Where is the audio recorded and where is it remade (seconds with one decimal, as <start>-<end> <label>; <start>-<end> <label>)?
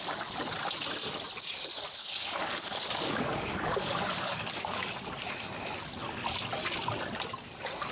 0.0-2.0 recorded; 2.0-4.9 remade; 4.9-7.9 recorded